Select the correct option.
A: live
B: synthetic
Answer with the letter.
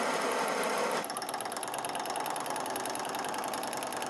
B